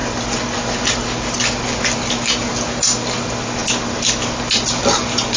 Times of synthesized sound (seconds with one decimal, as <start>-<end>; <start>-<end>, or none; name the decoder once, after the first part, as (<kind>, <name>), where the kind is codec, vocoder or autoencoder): none